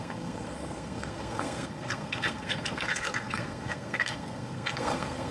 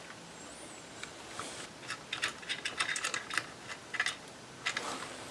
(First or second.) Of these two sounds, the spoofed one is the first